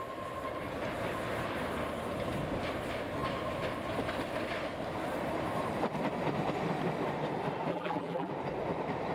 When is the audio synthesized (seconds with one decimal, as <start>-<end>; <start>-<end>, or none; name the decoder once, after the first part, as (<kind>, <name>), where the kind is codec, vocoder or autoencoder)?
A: 7.7-8.3 (vocoder, BigVGAN v2)